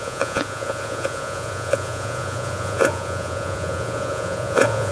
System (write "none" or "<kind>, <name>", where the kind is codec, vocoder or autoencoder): vocoder, Vocos